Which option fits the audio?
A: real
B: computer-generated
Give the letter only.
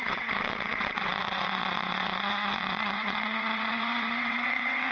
B